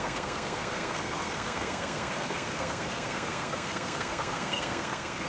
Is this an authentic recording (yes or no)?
no